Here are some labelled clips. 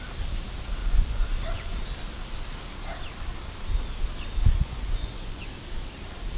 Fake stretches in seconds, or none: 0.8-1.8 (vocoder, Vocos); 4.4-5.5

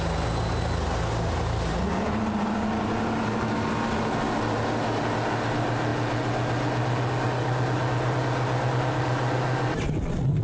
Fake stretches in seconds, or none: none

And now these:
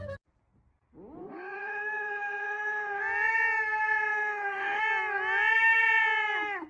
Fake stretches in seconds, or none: 1.2-3.0 (autoencoder, DAC-VAE); 4.1-4.8

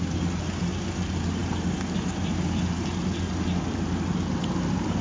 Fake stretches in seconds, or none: none

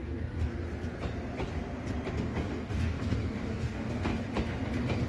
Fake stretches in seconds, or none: 0.0-0.5 (codec, DAC); 2.1-4.1

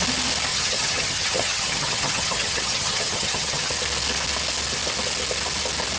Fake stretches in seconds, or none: 0.5-3.7 (vocoder, HiFi-GAN)

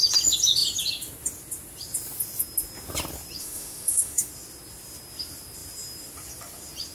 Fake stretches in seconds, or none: 3.4-4.3 (autoencoder, DAC-VAE)